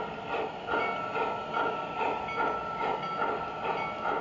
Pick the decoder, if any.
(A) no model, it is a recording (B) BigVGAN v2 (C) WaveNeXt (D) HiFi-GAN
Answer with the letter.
A